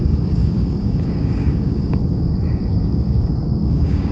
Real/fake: fake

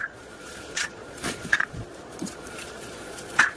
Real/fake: fake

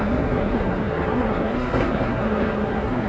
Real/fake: fake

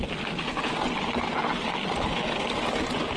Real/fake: real